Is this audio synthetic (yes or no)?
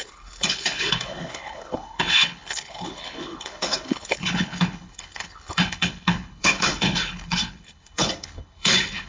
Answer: yes